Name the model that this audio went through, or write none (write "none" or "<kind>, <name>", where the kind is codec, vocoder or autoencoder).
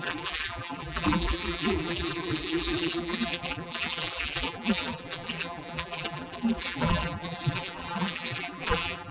vocoder, BigVGAN v2